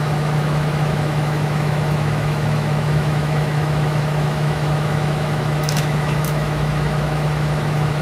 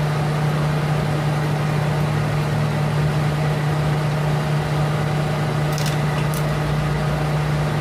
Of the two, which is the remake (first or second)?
first